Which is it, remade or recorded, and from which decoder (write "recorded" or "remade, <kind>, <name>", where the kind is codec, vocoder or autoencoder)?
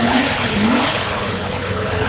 remade, codec, HILCodec